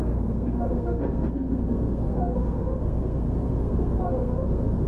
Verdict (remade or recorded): remade